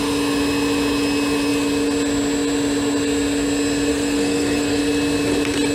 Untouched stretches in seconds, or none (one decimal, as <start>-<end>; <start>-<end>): 0.0-3.9; 4.8-5.7